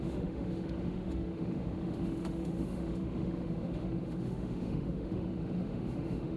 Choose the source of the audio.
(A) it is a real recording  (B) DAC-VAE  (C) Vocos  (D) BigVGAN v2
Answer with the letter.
B